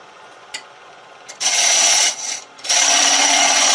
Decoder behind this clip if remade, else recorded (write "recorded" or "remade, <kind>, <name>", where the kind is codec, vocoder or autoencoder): remade, vocoder, Vocos